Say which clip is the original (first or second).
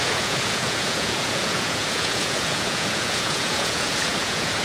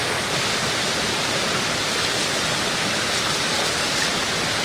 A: second